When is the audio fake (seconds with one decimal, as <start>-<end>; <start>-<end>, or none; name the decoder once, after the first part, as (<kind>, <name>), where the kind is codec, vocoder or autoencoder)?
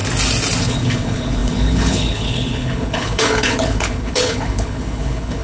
0.6-5.4 (codec, HILCodec)